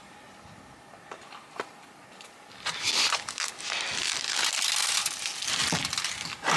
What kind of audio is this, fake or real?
real